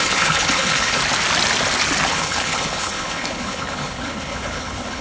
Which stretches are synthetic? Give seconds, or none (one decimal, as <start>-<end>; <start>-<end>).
0.0-1.0; 2.1-5.0